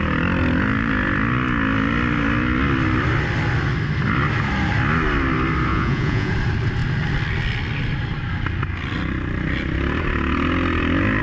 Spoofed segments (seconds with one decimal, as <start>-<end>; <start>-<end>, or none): 5.7-6.3